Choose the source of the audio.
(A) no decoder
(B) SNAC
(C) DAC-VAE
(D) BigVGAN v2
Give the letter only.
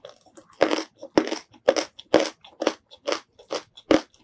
A